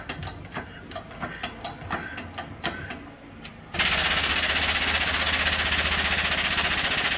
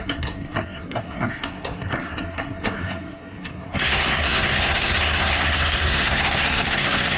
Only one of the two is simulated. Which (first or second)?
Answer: second